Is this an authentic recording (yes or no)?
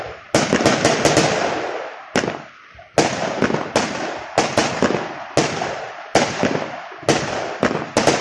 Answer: yes